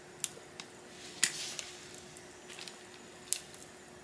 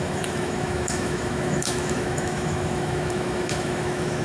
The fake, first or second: second